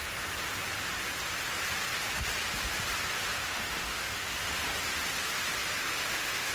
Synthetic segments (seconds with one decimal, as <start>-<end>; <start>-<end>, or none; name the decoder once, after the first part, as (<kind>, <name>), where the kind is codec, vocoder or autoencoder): 3.4-4.5 (autoencoder, DAC-VAE); 5.8-6.5